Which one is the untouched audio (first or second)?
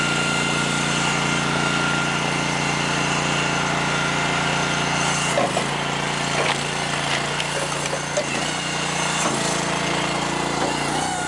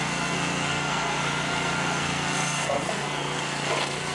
first